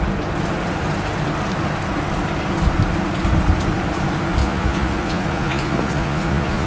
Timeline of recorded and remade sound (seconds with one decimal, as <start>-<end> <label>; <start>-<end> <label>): 0.0-4.4 recorded; 4.4-6.7 remade